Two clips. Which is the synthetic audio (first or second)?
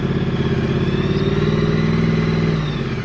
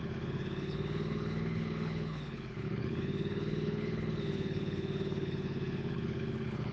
second